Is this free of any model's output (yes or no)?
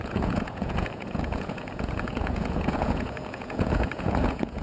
no